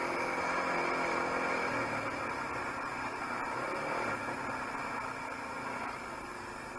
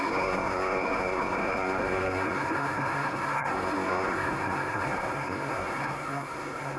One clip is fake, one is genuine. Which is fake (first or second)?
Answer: second